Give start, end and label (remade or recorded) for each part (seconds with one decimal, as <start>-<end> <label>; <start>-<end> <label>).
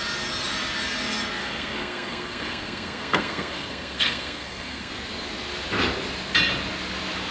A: 0.0-1.4 recorded; 1.4-4.9 remade; 4.9-7.3 recorded